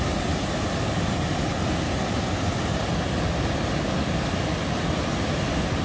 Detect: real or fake real